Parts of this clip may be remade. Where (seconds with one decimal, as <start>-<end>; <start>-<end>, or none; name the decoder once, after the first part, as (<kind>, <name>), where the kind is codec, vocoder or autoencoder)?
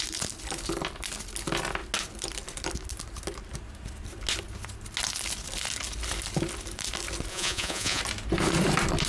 7.3-8.0 (vocoder, Vocos)